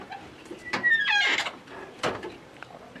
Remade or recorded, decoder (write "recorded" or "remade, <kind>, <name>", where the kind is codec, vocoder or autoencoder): remade, vocoder, BigVGAN v2